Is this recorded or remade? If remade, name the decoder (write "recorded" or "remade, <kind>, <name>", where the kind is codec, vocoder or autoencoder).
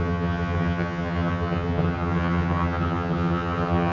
remade, vocoder, HiFi-GAN